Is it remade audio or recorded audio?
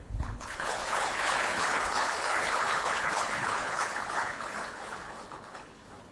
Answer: remade